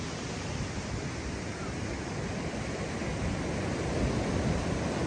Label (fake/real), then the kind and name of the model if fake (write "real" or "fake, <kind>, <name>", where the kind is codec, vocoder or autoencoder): real